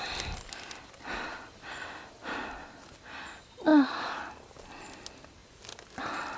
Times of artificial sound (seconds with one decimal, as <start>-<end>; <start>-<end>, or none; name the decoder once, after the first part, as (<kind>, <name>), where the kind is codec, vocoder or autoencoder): none